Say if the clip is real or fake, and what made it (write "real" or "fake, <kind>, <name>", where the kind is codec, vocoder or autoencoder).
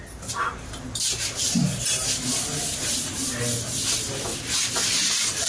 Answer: real